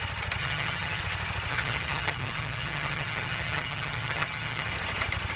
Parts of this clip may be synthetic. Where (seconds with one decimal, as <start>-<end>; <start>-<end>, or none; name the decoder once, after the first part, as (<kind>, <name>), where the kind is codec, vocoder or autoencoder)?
0.4-1.0 (vocoder, HiFi-GAN); 1.5-4.7